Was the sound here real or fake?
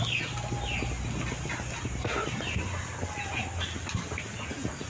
real